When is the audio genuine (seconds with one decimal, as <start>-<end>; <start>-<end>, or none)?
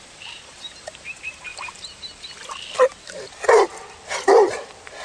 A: 1.5-4.5